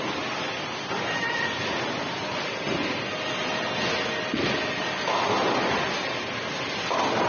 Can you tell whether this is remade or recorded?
recorded